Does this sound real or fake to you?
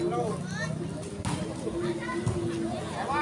real